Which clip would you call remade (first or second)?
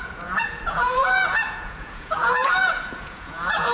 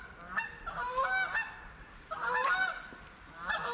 first